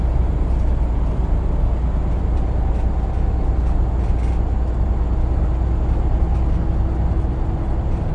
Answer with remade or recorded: recorded